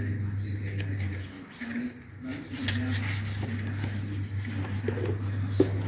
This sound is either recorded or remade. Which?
recorded